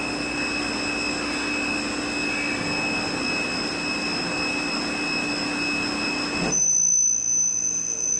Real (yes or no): yes